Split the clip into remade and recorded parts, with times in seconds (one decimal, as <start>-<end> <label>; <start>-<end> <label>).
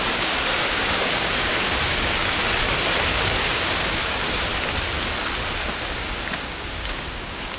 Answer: 0.0-2.4 remade; 2.4-3.1 recorded; 3.1-4.5 remade; 4.5-5.8 recorded; 5.8-7.6 remade